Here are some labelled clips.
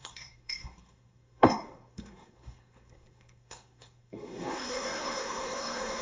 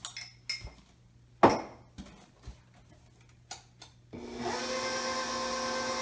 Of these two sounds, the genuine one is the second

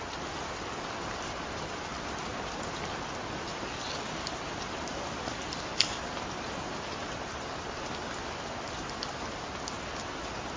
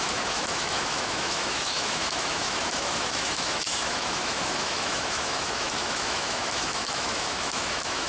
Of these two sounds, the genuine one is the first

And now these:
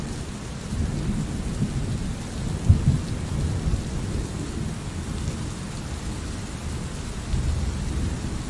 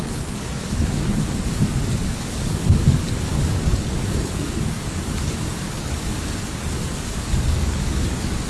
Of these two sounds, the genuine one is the first